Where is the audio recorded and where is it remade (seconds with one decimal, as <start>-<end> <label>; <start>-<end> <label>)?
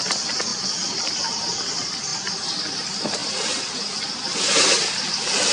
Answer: 0.0-0.5 recorded; 0.5-1.2 remade; 1.2-3.2 recorded; 3.2-4.0 remade; 4.0-5.5 recorded